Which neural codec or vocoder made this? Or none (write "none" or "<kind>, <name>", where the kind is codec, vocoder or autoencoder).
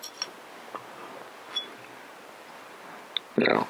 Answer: none